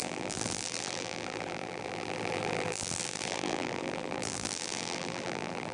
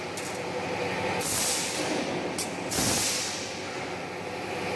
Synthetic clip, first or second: first